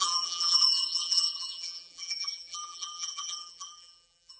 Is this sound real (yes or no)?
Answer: no